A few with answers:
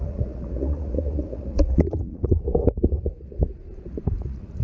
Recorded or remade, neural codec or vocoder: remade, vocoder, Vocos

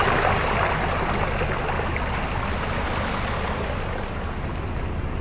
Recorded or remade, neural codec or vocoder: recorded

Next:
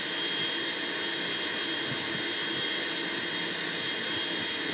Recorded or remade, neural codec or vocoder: recorded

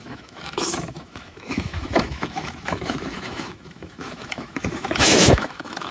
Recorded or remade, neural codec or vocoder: remade, autoencoder, DAC-VAE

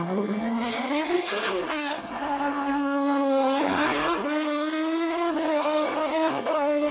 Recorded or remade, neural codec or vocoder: remade, codec, SNAC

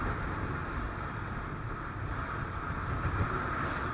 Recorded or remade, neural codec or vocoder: recorded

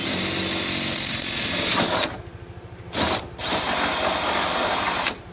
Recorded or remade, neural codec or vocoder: recorded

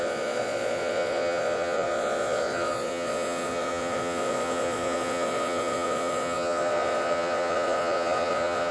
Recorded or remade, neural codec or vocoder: remade, vocoder, Vocos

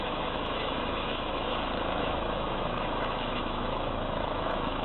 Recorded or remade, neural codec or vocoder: remade, autoencoder, DAC-VAE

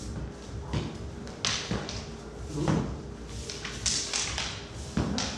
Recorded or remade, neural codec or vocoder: recorded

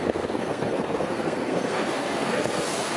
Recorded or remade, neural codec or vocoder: remade, codec, SNAC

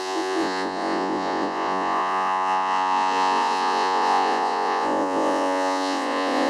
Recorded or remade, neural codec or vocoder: remade, vocoder, Vocos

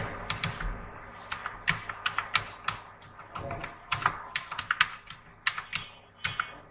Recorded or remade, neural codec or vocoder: recorded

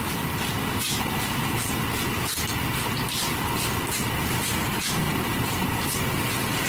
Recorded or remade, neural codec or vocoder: recorded